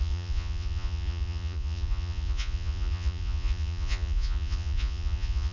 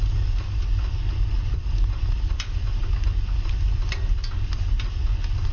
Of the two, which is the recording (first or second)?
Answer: second